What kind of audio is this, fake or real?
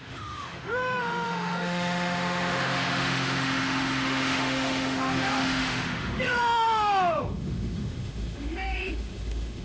fake